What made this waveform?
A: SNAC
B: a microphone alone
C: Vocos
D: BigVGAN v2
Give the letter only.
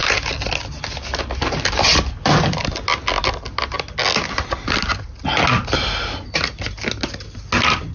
B